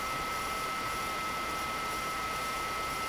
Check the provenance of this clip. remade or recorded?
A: remade